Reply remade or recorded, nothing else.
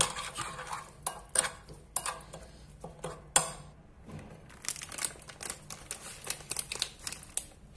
recorded